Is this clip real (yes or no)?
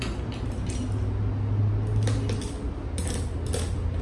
yes